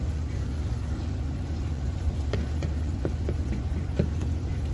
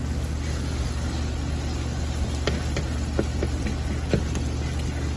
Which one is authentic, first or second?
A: second